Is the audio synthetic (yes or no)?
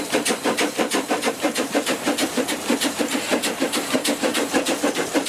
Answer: yes